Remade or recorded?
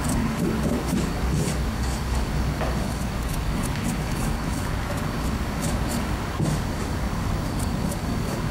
remade